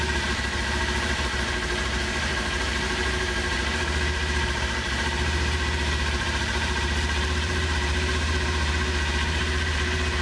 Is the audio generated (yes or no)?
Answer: yes